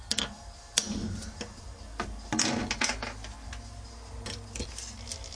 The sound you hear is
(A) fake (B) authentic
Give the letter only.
B